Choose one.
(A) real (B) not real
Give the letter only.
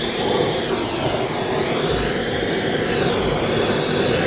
A